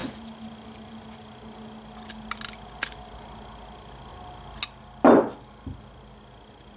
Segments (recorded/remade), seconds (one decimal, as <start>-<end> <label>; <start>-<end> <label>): 0.0-6.8 recorded